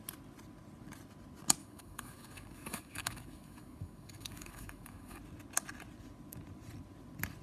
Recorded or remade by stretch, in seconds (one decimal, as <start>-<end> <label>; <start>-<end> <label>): 0.0-1.6 recorded; 1.6-5.2 remade; 5.2-7.4 recorded